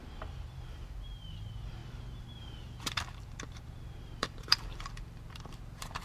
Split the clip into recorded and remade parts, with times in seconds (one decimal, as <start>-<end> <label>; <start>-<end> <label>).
0.0-6.0 remade

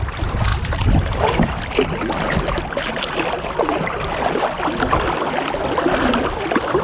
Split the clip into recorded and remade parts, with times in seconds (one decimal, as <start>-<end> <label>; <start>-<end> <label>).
0.0-6.8 recorded

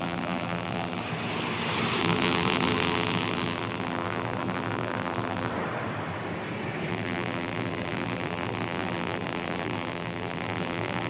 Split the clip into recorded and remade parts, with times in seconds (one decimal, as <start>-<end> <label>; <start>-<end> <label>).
0.0-1.0 remade; 1.0-2.0 recorded; 2.0-5.5 remade; 5.5-6.9 recorded; 6.9-11.1 remade